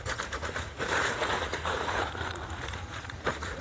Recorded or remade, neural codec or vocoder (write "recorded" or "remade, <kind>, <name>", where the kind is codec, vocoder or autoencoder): remade, vocoder, Vocos